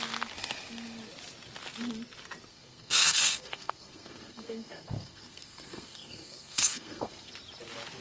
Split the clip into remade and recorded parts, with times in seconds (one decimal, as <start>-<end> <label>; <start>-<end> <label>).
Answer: 0.0-2.5 recorded; 2.5-7.3 remade; 7.3-8.0 recorded